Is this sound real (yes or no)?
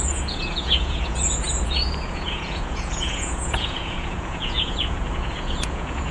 no